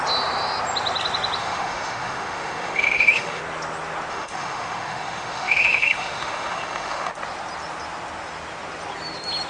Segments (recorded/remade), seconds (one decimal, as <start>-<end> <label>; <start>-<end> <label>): 0.0-1.4 recorded; 1.4-3.4 remade; 3.4-4.1 recorded; 4.1-7.1 remade; 7.1-9.5 recorded